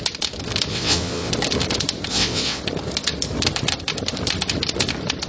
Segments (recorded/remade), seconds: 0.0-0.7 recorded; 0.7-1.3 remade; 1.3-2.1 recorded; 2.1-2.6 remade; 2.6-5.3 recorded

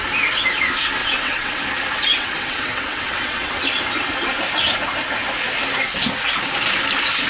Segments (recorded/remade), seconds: 0.0-1.0 recorded; 1.0-1.6 remade; 1.6-2.1 recorded; 2.1-3.6 remade; 3.6-7.3 recorded